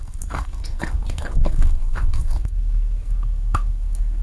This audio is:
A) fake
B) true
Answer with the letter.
A